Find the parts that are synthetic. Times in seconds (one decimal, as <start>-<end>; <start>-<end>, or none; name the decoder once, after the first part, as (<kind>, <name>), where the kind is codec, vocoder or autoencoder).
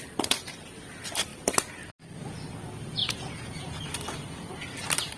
3.0-3.8 (vocoder, Vocos)